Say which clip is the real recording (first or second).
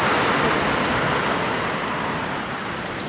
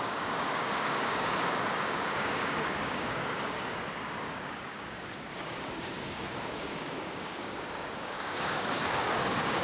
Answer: first